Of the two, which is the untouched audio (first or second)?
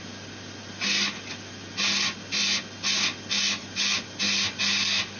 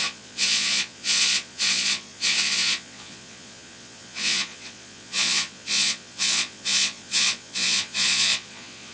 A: first